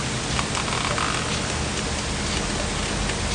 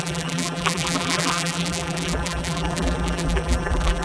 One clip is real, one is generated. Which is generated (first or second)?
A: second